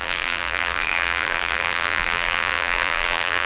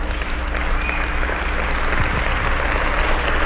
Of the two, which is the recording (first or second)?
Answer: second